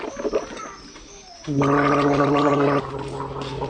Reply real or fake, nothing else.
real